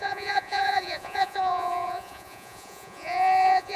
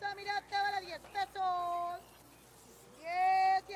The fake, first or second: first